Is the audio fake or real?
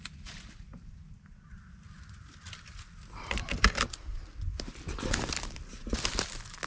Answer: real